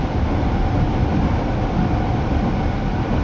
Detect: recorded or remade recorded